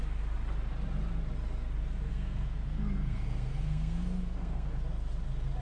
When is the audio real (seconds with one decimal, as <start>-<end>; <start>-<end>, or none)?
0.0-2.1; 4.7-5.6